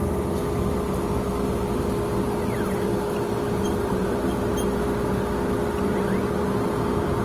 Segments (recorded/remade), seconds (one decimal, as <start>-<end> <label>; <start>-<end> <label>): 0.0-3.8 recorded; 3.8-4.5 remade; 4.5-7.2 recorded